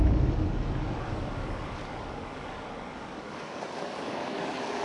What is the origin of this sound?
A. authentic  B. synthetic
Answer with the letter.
B